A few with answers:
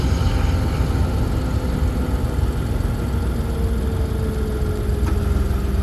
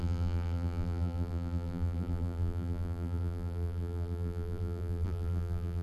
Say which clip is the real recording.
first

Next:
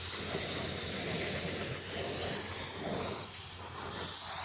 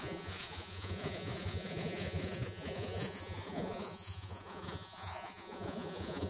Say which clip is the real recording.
first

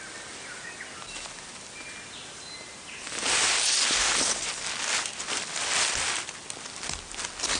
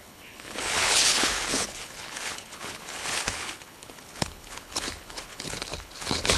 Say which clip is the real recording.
first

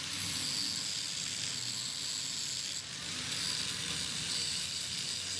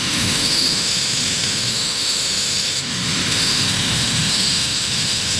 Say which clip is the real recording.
first